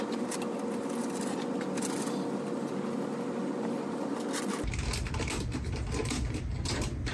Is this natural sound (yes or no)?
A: no